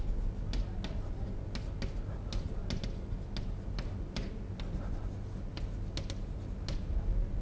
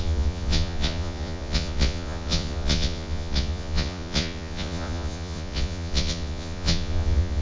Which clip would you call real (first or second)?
first